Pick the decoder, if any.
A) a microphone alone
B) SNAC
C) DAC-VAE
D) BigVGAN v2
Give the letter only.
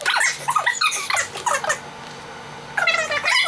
A